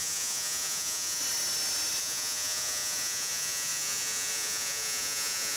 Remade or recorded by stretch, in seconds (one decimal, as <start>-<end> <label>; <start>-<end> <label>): 0.0-1.2 remade; 1.2-2.0 recorded; 2.0-5.6 remade